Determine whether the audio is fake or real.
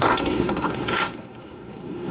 fake